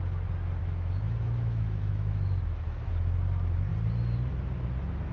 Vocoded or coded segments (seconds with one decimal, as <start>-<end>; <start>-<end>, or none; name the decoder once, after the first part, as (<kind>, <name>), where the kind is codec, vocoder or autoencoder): 0.6-2.9 (autoencoder, DAC-VAE)